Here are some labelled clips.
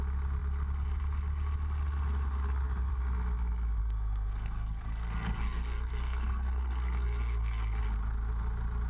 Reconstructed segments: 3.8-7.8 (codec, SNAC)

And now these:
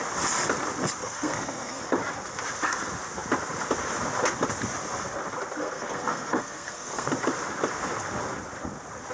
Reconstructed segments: 1.0-1.8 (codec, SNAC); 5.6-7.1

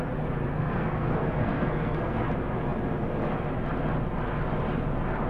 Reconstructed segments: 0.5-2.3 (codec, SNAC)

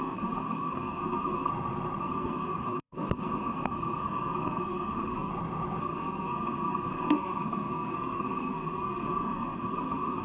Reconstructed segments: 0.0-1.5 (codec, SNAC); 2.0-5.3; 5.8-10.2

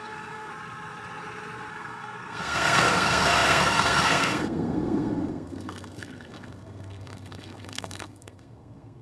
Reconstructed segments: 0.0-0.5 (codec, SNAC); 1.7-9.0

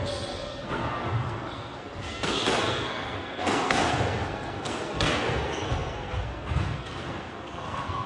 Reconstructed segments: 0.0-8.1 (codec, SNAC)

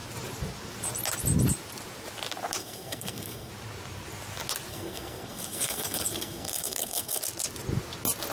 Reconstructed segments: 2.6-3.5 (codec, SNAC); 4.7-7.2

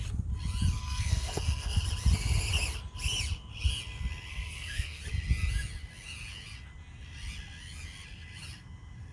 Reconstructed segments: 0.8-1.8 (codec, SNAC); 4.3-5.0